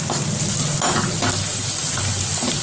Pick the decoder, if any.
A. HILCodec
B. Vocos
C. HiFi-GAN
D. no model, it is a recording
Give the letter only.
D